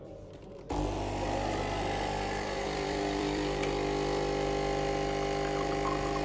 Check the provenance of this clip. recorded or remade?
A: remade